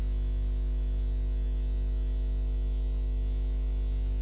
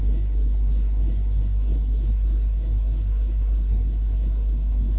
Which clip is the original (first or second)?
first